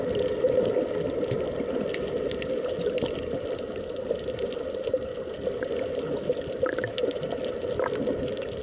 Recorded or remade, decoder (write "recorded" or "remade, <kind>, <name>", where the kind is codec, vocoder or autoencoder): recorded